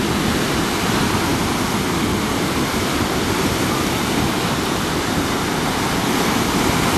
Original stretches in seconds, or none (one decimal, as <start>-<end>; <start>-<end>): 0.0-7.0